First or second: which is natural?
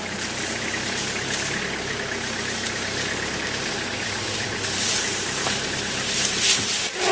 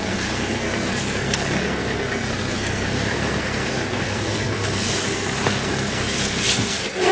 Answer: first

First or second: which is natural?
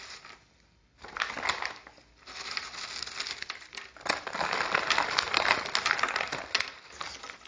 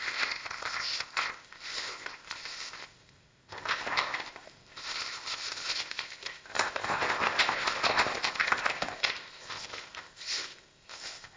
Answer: first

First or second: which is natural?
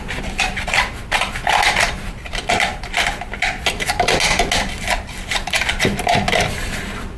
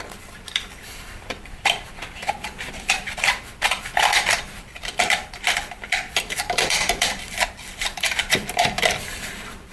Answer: first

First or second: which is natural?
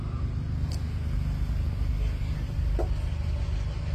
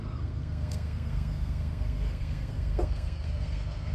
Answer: first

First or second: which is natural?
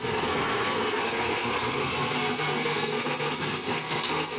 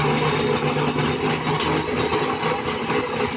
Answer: second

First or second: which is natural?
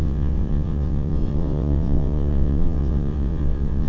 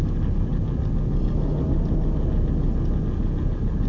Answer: second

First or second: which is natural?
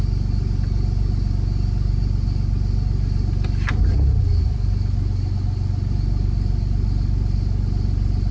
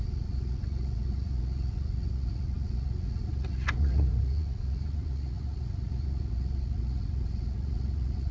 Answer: first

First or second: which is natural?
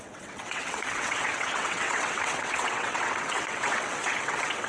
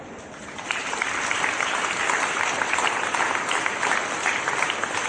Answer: second